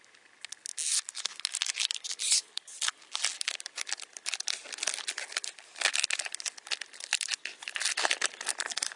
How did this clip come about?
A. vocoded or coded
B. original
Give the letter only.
B